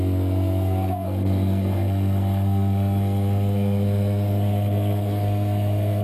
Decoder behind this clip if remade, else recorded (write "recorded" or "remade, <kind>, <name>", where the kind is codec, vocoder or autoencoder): remade, codec, SNAC